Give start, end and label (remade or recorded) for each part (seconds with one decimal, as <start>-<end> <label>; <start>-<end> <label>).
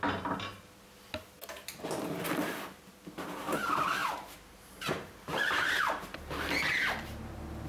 0.0-4.0 recorded; 4.0-6.4 remade; 6.4-7.7 recorded